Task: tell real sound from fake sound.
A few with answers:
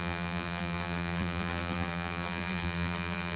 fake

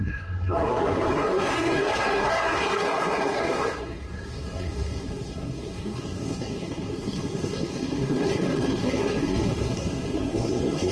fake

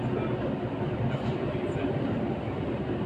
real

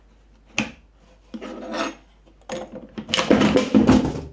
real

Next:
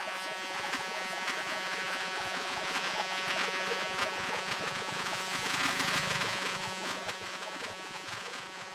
fake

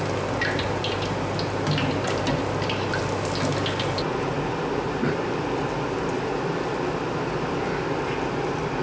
real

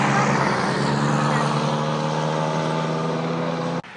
real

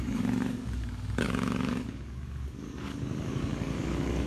fake